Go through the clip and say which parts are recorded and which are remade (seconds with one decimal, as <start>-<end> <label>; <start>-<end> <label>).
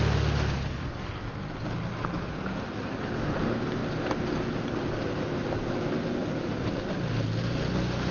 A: 0.0-8.1 recorded